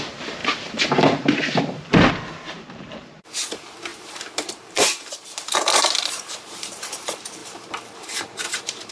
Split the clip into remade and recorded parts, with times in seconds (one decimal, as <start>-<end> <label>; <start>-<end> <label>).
0.0-8.9 remade